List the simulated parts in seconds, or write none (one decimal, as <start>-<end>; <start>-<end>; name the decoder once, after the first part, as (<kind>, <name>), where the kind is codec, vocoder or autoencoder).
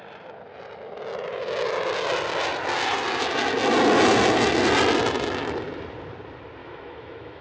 6.6-7.4 (autoencoder, DAC-VAE)